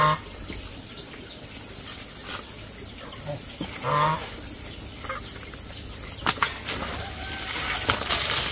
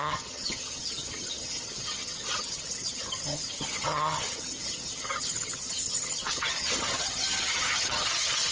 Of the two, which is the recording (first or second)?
first